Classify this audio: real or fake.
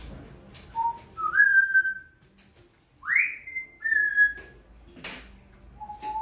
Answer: real